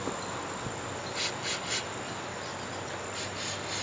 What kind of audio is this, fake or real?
real